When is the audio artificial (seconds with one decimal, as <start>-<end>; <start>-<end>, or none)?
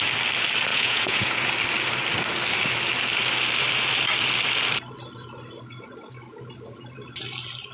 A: 0.7-1.5